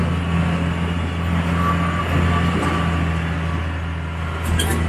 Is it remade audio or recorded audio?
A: recorded